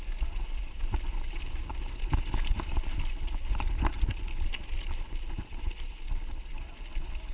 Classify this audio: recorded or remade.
recorded